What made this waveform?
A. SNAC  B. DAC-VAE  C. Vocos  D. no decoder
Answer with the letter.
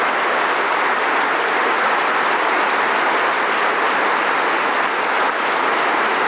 D